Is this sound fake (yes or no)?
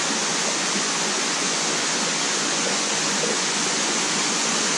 yes